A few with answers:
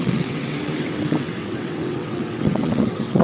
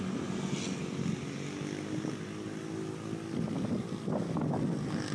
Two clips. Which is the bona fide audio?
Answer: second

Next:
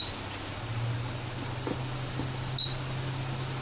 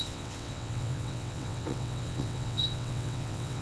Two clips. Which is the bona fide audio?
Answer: first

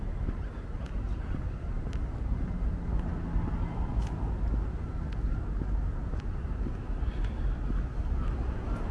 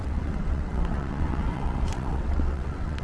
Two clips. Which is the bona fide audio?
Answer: first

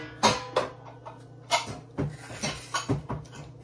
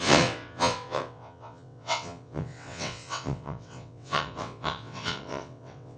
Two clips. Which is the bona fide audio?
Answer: first